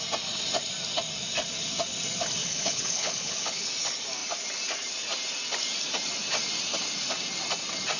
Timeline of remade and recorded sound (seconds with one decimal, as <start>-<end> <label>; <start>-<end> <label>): 0.0-2.4 recorded; 2.4-3.7 remade; 3.7-8.0 recorded